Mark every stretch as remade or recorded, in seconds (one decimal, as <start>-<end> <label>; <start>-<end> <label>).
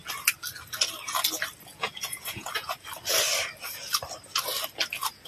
0.0-1.7 recorded; 1.7-2.7 remade; 2.7-5.3 recorded